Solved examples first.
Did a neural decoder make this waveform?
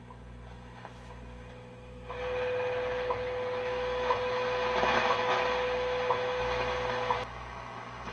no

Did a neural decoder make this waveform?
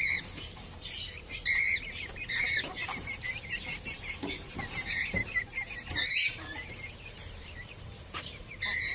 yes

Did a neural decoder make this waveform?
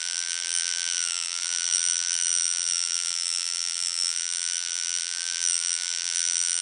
yes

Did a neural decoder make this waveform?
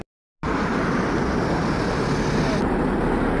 no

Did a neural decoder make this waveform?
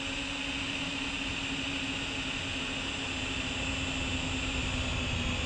no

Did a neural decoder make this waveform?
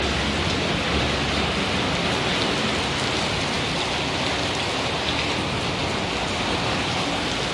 no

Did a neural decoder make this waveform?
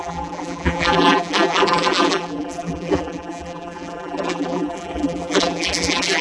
yes